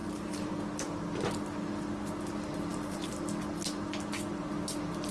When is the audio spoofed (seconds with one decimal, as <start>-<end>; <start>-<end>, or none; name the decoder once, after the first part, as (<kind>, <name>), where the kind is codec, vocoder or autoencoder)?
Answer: 0.0-0.5 (vocoder, BigVGAN v2); 2.7-3.9

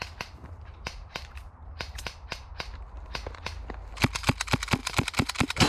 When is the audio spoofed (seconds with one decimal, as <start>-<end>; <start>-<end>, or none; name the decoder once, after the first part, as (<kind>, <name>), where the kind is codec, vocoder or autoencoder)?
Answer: 0.4-2.5 (vocoder, BigVGAN v2); 4.8-5.7

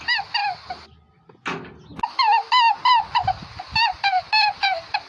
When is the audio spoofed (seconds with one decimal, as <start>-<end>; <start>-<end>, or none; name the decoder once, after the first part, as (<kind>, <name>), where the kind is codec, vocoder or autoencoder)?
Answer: none

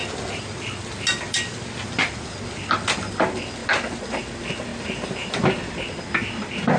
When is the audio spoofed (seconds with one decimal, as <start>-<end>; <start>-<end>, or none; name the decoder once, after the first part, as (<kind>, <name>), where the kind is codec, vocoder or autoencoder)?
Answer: none

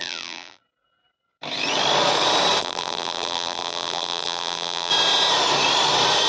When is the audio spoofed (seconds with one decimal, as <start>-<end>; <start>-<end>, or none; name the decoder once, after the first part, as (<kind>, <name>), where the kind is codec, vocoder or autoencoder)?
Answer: 0.0-0.6 (vocoder, BigVGAN v2); 2.6-4.9

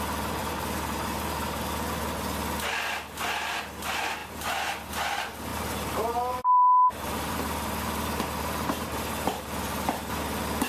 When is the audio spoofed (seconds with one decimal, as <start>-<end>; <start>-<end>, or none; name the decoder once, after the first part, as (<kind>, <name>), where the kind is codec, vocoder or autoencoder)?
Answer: 0.4-1.6 (vocoder, BigVGAN v2); 5.5-10.1

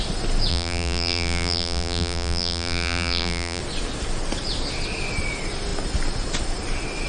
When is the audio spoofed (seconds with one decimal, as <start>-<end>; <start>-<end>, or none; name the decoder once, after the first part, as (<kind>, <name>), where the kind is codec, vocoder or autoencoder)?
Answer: 0.5-3.6 (vocoder, BigVGAN v2)